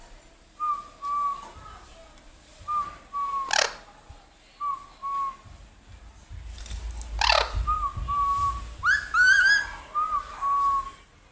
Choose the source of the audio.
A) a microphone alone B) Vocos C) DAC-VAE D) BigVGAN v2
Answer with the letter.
A